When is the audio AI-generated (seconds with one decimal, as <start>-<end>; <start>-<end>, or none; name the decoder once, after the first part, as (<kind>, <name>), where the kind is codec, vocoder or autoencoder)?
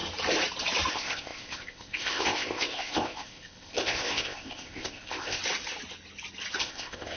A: 0.9-5.4 (codec, ZipCodec); 6.6-7.2